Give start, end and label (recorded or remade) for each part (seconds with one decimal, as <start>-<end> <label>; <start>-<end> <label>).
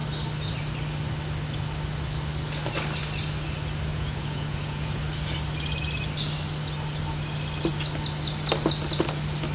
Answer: 0.0-3.9 recorded; 3.9-5.0 remade; 5.0-9.5 recorded